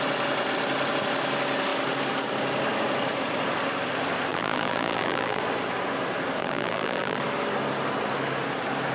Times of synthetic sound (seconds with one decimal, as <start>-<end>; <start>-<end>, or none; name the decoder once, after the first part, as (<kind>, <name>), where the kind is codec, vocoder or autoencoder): 4.3-5.4 (vocoder, BigVGAN v2); 6.4-7.2